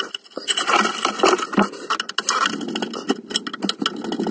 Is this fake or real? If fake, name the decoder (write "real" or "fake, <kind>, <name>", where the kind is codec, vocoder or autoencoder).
real